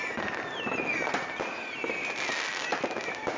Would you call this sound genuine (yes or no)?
yes